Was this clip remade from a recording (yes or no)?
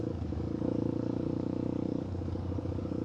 yes